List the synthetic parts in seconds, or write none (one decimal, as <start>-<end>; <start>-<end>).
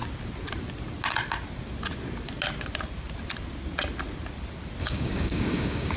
4.8-6.0